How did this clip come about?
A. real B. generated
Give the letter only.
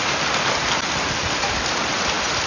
A